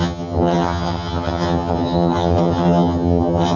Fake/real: fake